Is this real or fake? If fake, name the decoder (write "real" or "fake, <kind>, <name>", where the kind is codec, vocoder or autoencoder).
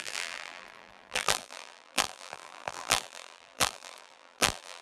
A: fake, vocoder, BigVGAN v2